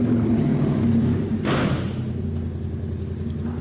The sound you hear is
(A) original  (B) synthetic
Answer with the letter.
A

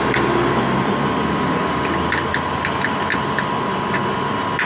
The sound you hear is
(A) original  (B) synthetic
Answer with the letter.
B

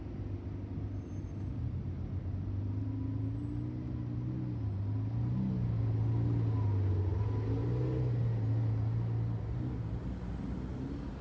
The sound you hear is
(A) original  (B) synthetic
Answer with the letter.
A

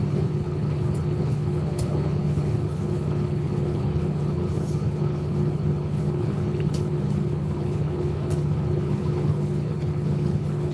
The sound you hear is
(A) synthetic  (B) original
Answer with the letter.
A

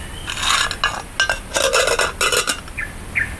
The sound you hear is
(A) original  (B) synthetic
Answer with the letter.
A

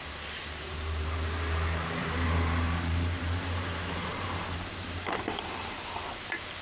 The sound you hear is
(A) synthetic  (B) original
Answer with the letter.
A